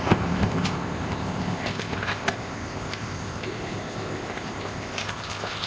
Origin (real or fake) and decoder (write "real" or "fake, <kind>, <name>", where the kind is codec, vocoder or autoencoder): fake, codec, ZipCodec